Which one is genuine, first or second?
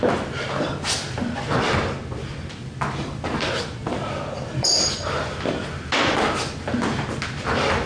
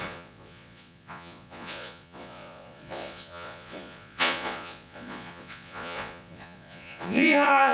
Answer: first